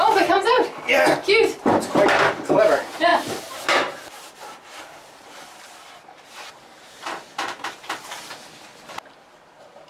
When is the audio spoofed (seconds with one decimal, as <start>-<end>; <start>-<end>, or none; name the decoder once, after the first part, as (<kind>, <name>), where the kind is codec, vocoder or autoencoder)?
3.1-8.3 (vocoder, BigVGAN v2)